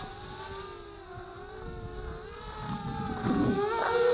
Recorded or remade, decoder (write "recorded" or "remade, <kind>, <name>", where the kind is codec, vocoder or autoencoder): recorded